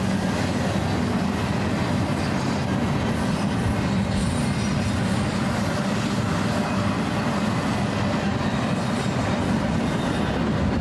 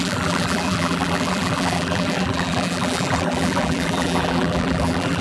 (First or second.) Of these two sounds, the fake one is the second